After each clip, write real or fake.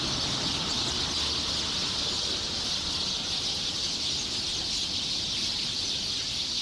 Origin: real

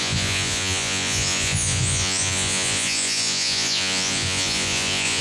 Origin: fake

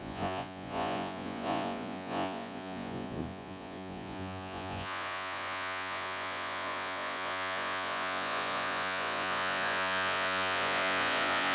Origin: fake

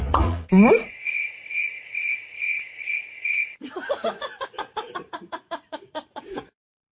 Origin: fake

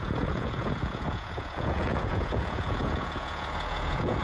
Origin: fake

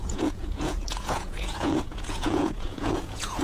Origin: fake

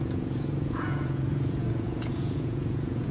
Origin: fake